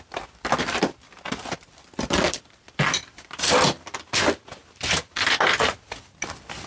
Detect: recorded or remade remade